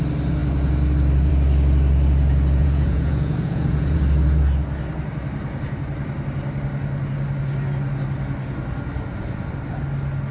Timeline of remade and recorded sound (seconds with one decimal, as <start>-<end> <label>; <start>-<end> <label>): 0.0-2.6 recorded; 2.6-4.0 remade; 4.0-10.3 recorded